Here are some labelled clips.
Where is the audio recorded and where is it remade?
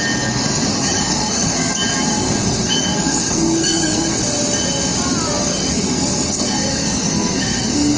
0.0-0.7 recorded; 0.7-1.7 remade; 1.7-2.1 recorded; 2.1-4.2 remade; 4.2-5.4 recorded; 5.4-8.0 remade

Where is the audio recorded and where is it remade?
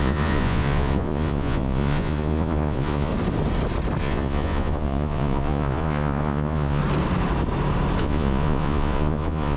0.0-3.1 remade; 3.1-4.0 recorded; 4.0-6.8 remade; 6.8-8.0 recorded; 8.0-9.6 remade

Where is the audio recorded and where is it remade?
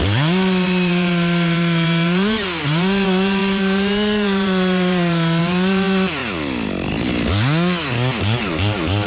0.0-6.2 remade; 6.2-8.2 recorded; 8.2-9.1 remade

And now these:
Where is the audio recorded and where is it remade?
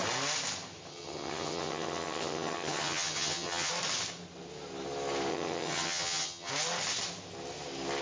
0.0-0.9 recorded; 0.9-3.7 remade; 3.7-5.3 recorded; 5.3-6.5 remade; 6.5-8.0 recorded